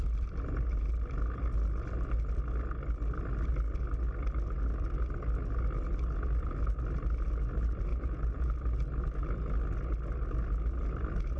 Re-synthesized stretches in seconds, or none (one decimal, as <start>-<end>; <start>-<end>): 7.9-8.5